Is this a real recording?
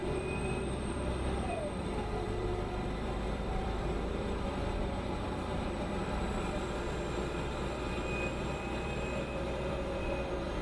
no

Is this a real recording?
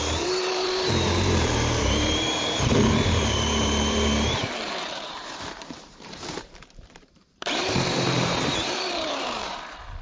no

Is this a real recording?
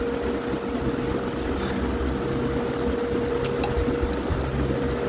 yes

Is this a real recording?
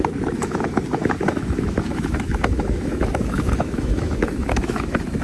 no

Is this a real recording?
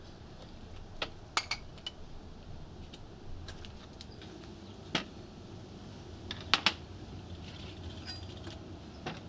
yes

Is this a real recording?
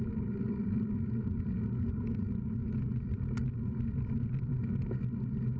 yes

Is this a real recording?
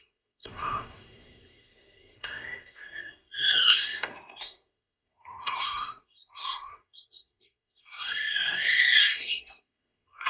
no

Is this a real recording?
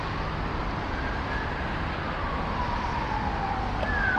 yes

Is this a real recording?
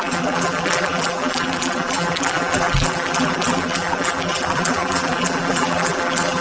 no